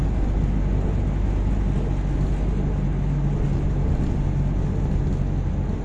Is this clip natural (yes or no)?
yes